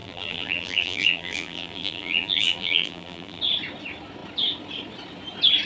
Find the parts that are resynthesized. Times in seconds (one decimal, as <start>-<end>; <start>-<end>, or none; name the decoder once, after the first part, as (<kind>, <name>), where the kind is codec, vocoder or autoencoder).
0.0-3.4 (vocoder, BigVGAN v2)

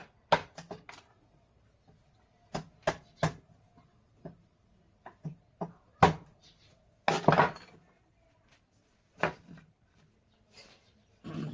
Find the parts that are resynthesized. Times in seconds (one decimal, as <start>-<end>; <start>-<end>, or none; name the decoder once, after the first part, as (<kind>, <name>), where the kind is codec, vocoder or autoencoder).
none

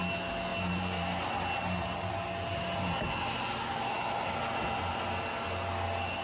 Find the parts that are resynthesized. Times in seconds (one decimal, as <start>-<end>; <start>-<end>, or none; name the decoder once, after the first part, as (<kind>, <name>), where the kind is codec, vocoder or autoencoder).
none

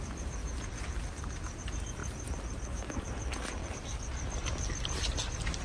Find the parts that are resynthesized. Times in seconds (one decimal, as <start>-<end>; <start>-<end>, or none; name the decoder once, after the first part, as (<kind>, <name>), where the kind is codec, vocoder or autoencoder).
none

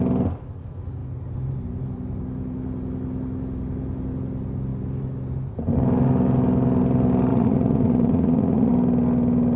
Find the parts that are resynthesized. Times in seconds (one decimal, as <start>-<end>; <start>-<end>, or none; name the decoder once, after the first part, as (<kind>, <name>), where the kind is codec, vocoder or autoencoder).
7.3-8.7 (vocoder, Vocos)

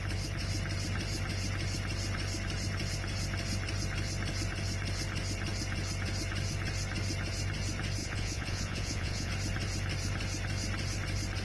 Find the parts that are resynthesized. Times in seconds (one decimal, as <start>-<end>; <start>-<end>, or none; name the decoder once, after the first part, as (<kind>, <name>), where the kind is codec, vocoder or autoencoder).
8.0-9.3 (vocoder, Vocos)